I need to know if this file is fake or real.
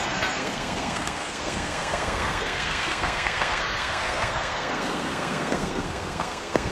fake